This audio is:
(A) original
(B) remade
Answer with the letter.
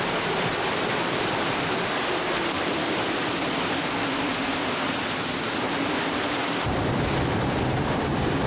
B